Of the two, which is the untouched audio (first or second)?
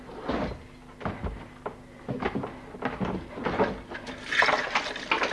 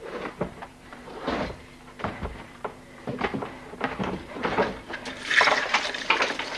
first